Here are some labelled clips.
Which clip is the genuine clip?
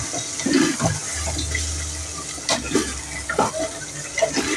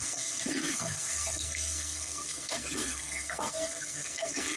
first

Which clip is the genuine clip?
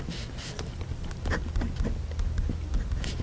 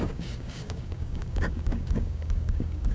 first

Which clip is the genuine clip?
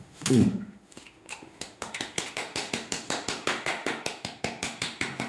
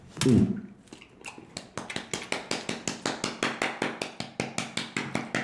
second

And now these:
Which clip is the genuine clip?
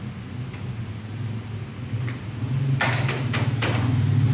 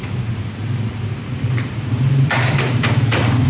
first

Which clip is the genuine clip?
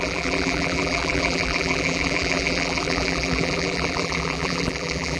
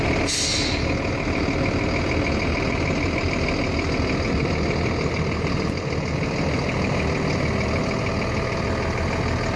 second